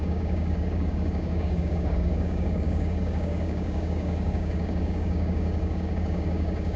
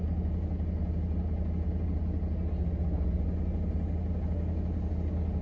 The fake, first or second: first